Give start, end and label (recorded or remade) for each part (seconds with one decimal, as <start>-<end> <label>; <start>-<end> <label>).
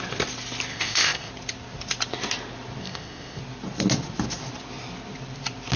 0.0-0.7 recorded; 0.7-1.3 remade; 1.3-2.8 recorded; 2.8-3.4 remade; 3.4-5.8 recorded